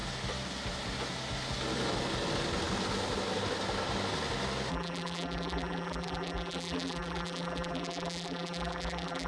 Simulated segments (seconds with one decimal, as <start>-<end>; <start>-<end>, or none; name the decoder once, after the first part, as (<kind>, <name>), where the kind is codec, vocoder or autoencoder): 4.7-9.3 (vocoder, BigVGAN v2)